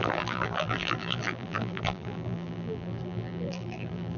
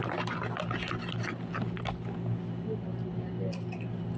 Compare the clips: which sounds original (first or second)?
second